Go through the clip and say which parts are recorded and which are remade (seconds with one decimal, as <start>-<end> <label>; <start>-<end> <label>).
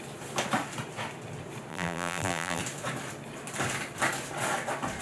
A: 0.0-1.7 recorded; 1.7-2.6 remade; 2.6-5.0 recorded